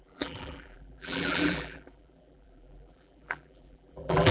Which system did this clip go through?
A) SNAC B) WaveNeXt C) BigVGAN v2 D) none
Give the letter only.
C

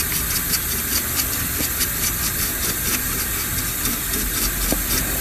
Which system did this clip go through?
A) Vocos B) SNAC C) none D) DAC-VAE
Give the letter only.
C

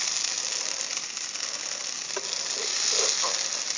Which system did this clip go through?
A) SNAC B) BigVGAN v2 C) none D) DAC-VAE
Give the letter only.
C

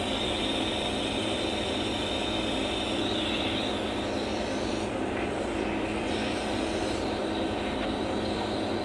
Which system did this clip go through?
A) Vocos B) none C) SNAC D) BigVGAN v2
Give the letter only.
B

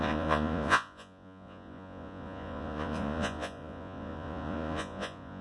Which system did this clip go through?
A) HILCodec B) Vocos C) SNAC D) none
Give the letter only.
B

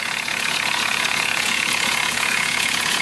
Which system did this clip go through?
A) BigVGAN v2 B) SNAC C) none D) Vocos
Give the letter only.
D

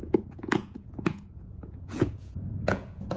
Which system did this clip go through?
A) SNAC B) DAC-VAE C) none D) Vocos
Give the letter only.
D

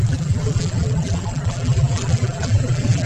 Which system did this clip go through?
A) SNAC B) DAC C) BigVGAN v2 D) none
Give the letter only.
C